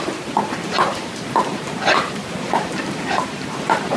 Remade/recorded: remade